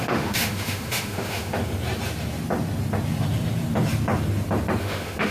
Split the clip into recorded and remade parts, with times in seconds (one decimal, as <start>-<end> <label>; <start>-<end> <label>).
0.0-1.6 remade; 1.6-4.8 recorded; 4.8-5.3 remade